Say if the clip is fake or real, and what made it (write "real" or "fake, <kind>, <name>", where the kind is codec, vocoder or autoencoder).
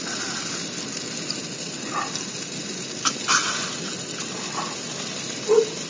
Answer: real